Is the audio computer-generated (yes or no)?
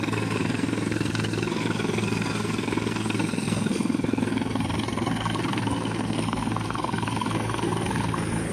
yes